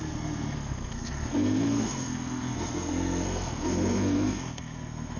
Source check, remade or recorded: remade